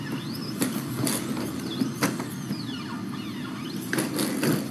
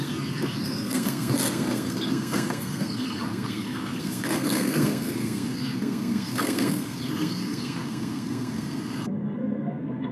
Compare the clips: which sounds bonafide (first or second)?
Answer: first